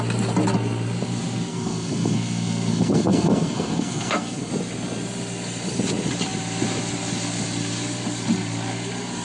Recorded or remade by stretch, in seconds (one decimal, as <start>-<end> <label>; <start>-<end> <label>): 0.0-1.5 recorded; 1.5-4.5 remade; 4.5-9.2 recorded